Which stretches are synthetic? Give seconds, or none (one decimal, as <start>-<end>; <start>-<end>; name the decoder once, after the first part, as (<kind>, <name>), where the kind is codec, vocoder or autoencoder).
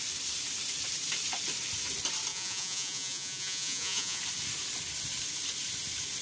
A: 2.3-4.2 (vocoder, Vocos)